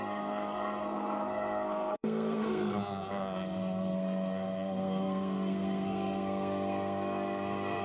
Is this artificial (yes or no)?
yes